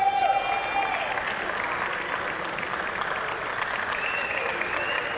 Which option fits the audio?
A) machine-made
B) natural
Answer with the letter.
B